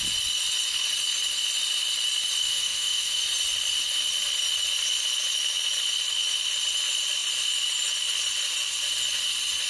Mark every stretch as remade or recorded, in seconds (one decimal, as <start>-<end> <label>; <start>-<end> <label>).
0.0-2.4 recorded; 2.4-3.2 remade; 3.2-9.7 recorded